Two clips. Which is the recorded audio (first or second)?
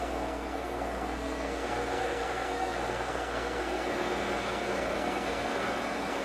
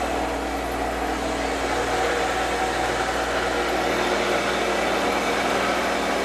second